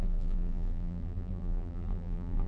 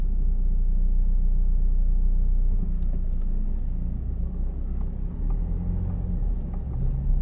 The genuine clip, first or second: second